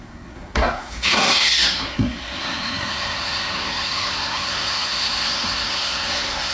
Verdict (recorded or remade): remade